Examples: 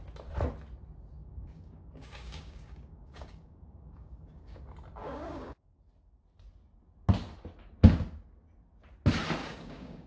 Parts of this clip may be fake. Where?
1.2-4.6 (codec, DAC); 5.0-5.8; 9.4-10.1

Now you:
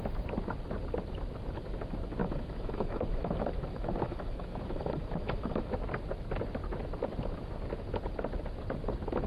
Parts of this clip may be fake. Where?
2.2-5.7 (autoencoder, DAC-VAE)

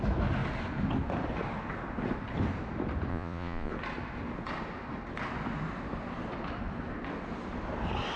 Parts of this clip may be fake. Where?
3.1-3.7 (vocoder, Vocos)